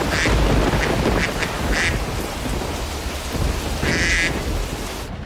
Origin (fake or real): real